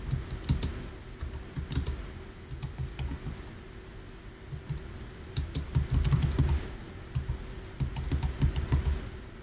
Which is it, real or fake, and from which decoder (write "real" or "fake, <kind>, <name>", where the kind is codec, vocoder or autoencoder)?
real